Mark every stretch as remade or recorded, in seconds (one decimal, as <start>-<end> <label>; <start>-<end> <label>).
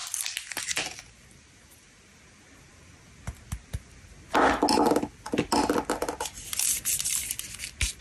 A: 0.0-8.0 recorded